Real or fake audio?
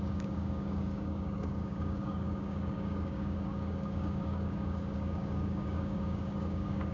fake